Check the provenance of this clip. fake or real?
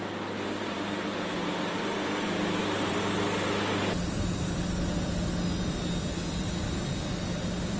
real